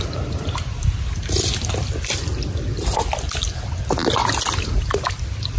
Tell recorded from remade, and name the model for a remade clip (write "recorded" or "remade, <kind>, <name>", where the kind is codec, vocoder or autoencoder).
recorded